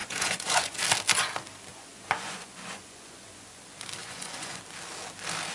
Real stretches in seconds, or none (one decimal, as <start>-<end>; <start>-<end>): 0.8-1.7; 3.6-4.0; 4.6-5.5